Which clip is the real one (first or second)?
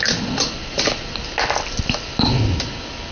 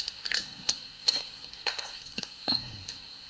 first